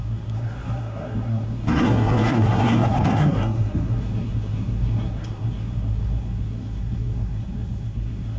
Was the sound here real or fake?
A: fake